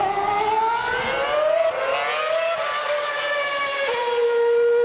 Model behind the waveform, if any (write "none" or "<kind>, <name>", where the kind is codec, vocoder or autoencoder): none